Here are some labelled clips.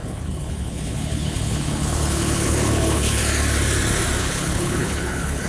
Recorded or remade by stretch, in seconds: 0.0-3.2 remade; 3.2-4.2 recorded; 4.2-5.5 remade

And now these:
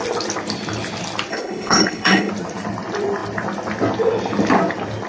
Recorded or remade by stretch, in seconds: 0.0-1.3 recorded; 1.3-2.3 remade; 2.3-5.1 recorded

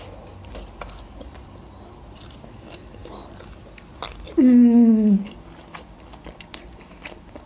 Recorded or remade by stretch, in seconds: 0.0-7.5 recorded